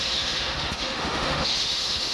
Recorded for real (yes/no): no